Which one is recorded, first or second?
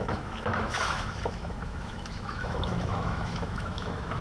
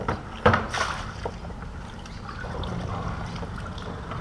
second